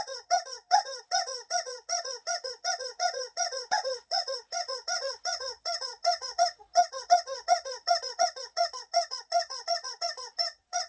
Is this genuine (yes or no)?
no